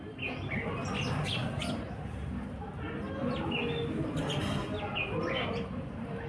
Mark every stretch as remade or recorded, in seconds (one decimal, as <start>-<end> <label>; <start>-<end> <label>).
0.0-1.4 remade; 1.4-5.2 recorded; 5.2-6.3 remade